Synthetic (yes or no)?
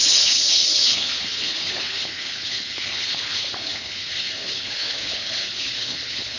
yes